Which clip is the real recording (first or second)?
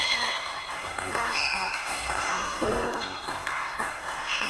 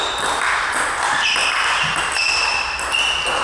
second